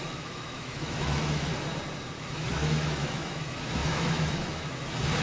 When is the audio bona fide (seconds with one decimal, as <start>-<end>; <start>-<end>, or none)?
1.5-2.2